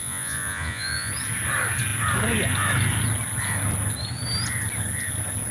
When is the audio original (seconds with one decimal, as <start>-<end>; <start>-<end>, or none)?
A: 1.1-5.5